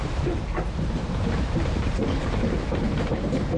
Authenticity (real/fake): fake